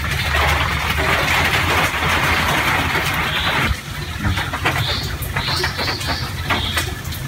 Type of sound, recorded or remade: recorded